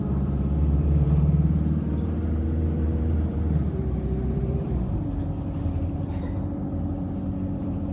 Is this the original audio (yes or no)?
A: no